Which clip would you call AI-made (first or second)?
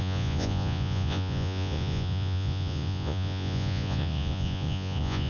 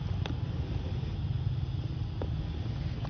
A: first